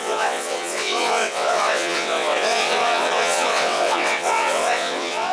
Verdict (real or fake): fake